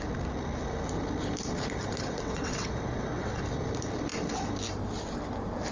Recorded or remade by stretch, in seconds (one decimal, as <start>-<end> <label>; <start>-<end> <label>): 0.0-2.0 recorded; 2.0-3.4 remade; 3.4-5.7 recorded

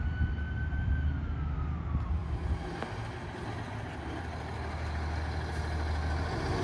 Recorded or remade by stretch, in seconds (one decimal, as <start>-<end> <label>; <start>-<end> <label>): 0.0-6.6 recorded

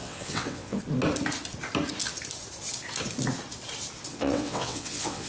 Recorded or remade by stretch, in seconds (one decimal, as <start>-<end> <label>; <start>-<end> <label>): 0.0-0.8 remade; 0.8-4.1 recorded; 4.1-5.3 remade

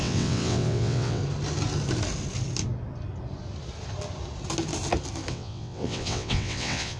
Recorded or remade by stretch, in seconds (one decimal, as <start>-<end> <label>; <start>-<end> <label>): 0.0-1.2 remade; 1.2-5.3 recorded; 5.3-7.0 remade

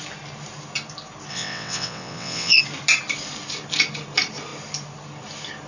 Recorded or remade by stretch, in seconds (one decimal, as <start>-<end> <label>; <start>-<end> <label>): 0.0-1.3 recorded; 1.3-2.6 remade; 2.6-5.7 recorded